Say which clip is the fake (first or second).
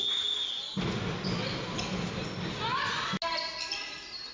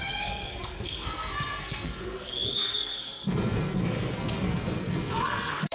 second